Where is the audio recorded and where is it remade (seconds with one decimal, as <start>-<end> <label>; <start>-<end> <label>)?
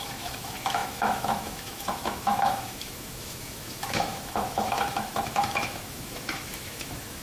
0.0-7.2 remade